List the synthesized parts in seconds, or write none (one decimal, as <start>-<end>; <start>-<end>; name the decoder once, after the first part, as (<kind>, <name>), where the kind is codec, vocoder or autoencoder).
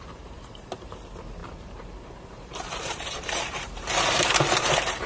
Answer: 0.0-1.4 (vocoder, BigVGAN v2); 2.3-5.1